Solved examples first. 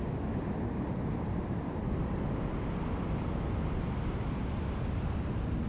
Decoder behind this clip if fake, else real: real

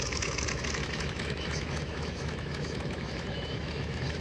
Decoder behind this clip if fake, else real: fake, autoencoder, DAC-VAE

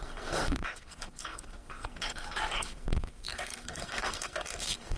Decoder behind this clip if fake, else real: fake, codec, SNAC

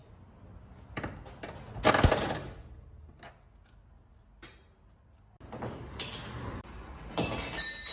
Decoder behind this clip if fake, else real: real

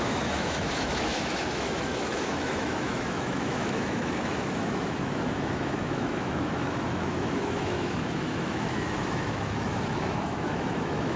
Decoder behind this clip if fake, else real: fake, autoencoder, DAC-VAE